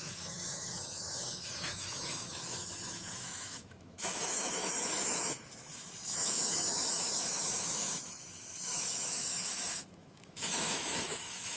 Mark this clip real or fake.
fake